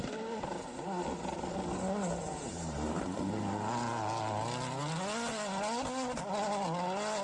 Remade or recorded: recorded